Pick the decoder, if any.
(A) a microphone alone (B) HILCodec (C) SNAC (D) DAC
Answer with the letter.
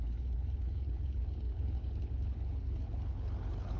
B